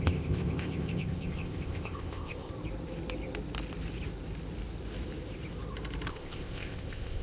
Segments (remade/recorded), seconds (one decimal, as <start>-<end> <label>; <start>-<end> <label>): 0.0-2.5 remade; 2.5-6.1 recorded; 6.1-7.2 remade

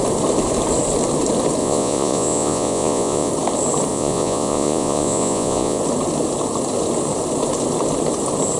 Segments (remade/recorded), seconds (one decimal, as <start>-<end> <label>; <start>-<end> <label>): 0.0-1.6 recorded; 1.6-3.3 remade; 3.3-3.9 recorded; 3.9-5.8 remade; 5.8-8.6 recorded